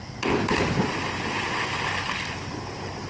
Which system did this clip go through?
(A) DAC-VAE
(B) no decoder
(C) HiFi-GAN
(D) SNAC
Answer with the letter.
B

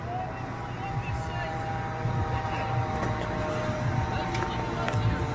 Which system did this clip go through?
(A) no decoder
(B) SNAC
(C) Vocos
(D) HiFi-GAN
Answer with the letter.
A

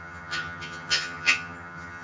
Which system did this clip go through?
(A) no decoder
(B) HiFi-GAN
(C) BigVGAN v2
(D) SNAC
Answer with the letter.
B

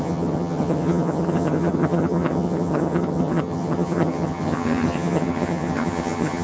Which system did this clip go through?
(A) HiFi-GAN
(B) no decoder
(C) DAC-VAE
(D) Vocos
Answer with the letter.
A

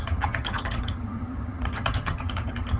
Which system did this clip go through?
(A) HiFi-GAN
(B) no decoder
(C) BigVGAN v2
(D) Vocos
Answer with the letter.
A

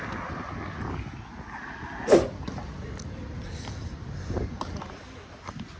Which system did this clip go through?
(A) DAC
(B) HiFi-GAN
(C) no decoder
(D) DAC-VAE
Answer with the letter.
C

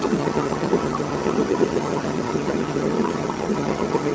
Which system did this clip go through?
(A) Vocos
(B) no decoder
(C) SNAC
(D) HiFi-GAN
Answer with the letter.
D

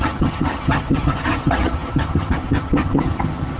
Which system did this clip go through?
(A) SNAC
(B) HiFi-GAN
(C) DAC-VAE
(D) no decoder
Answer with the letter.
B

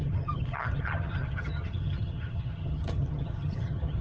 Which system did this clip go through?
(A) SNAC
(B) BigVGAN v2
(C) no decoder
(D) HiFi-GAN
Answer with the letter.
D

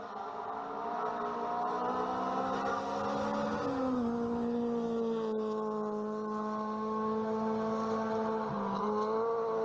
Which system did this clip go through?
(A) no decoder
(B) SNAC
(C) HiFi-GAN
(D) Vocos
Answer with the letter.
A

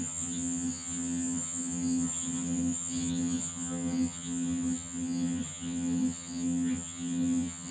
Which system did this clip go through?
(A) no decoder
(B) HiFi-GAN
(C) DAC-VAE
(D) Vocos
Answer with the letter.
B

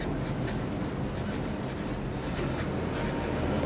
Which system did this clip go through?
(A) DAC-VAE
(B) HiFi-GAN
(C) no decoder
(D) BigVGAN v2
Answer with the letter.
C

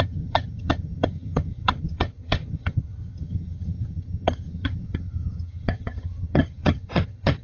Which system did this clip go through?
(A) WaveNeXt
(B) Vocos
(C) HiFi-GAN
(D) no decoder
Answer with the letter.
C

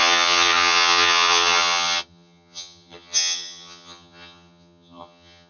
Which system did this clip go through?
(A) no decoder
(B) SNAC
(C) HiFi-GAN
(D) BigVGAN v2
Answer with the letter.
C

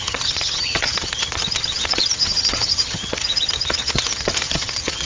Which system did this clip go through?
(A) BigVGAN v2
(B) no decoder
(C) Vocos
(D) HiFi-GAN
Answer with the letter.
D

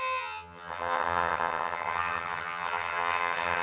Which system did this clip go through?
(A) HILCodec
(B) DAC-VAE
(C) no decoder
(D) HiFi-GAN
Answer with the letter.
D